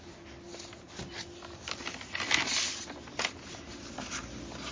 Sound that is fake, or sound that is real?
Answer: real